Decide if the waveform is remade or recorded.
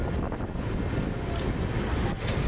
recorded